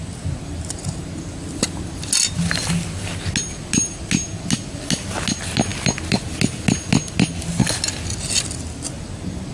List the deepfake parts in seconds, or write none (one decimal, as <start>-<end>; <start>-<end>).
none